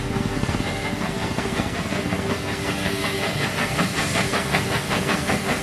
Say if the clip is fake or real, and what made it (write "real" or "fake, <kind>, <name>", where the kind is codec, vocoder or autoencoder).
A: fake, codec, SNAC